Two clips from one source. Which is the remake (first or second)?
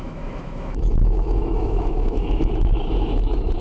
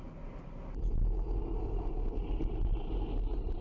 first